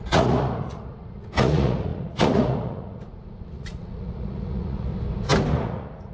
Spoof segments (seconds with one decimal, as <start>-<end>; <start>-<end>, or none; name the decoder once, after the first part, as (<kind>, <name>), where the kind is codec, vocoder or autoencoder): 0.0-4.9 (vocoder, Vocos); 5.5-6.1